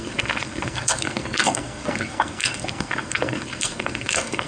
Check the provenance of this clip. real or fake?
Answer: fake